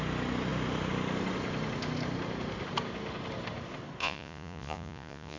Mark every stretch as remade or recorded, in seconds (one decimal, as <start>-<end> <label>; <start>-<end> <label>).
0.0-4.0 recorded; 4.0-5.4 remade